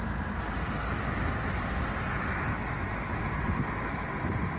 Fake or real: real